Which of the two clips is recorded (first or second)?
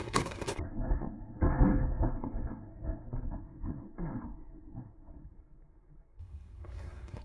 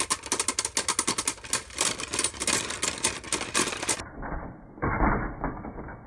second